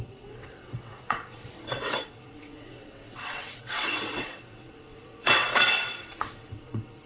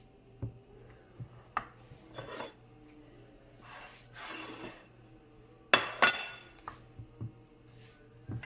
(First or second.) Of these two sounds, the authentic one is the second